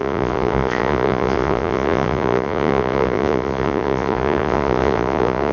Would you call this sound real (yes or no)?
no